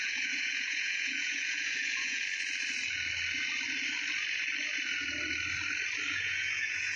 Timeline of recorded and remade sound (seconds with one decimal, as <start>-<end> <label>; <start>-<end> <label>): 0.0-2.2 remade; 2.2-6.1 recorded; 6.1-7.0 remade